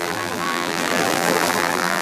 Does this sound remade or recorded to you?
remade